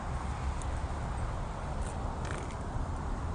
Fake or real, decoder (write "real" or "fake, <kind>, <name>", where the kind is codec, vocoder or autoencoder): real